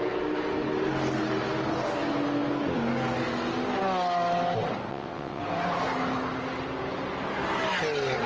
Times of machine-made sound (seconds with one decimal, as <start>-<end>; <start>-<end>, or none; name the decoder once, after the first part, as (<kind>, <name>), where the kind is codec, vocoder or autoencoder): 4.9-5.4 (vocoder, WaveNeXt)

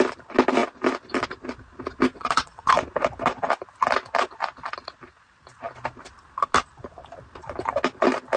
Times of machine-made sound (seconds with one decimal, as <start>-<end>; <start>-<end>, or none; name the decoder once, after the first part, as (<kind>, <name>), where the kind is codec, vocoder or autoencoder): 2.1-2.7 (vocoder, WaveNeXt)

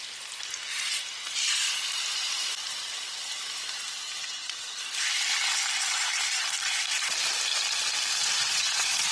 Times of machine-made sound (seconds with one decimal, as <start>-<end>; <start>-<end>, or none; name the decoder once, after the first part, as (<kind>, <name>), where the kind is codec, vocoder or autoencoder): 4.2-4.8 (vocoder, WaveNeXt); 8.2-9.1

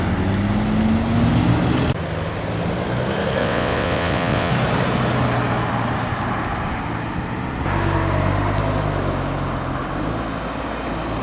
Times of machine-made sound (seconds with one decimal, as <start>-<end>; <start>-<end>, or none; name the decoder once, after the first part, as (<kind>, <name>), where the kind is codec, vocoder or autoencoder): 3.4-4.5 (vocoder, WaveNeXt)

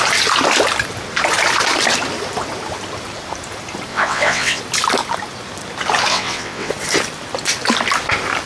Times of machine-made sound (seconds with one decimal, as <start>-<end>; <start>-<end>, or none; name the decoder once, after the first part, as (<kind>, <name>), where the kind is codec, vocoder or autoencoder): 3.9-4.6 (vocoder, WaveNeXt); 6.1-6.7

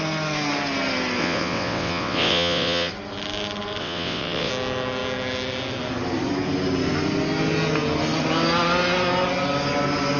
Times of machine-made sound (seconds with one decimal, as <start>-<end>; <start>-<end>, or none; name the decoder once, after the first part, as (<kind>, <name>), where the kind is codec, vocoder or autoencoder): 1.2-2.9 (vocoder, WaveNeXt); 3.8-4.5

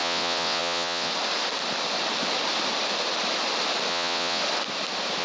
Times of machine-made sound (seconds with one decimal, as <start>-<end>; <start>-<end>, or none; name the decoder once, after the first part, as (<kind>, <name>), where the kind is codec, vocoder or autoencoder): 0.0-1.1 (vocoder, WaveNeXt); 3.9-4.4

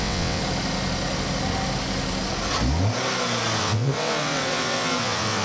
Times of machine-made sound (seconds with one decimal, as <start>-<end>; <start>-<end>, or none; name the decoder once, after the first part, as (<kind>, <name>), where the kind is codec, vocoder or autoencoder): 0.0-0.4 (vocoder, WaveNeXt); 3.6-5.4